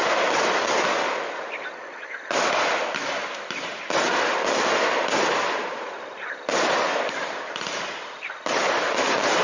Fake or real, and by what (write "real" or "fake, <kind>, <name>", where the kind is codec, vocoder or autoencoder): fake, vocoder, BigVGAN v2